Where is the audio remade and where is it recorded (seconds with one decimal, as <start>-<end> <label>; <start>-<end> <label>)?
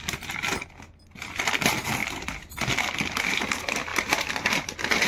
0.0-3.9 recorded; 3.9-5.1 remade